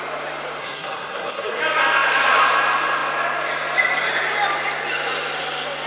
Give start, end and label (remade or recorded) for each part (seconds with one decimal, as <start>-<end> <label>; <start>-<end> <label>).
0.0-0.6 recorded; 0.6-1.6 remade; 1.6-5.9 recorded